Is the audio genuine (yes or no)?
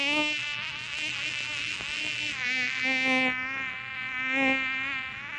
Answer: no